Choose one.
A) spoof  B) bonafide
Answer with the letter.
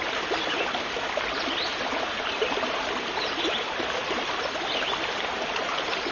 A